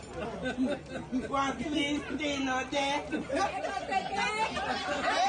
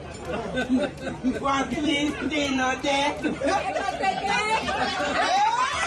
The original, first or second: first